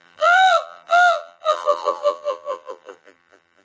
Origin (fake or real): fake